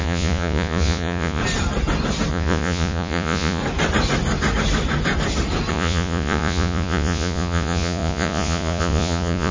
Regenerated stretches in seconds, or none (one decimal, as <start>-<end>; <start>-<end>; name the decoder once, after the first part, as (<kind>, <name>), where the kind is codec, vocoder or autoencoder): 0.0-1.4 (vocoder, Vocos); 2.3-3.6; 5.7-9.5